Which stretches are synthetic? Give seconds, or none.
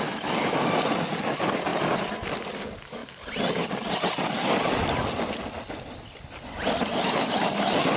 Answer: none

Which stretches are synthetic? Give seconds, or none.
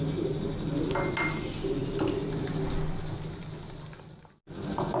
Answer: none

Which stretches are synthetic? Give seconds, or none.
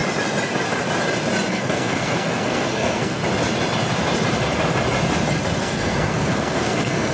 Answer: 1.5-3.2 (codec, SNAC); 5.6-7.1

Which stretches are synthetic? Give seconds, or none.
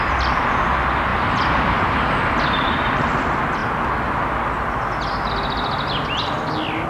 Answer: 1.1-2.8 (vocoder, BigVGAN v2)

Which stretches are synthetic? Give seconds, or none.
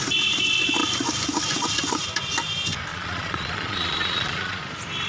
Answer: 2.9-4.6 (vocoder, Vocos)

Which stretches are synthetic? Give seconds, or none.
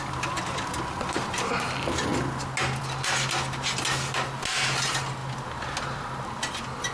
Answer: none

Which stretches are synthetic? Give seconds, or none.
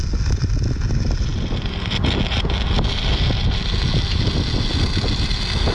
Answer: none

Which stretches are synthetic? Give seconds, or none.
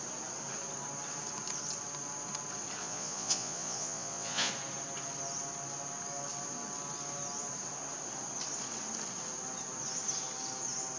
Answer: 2.8-4.5 (vocoder, Vocos)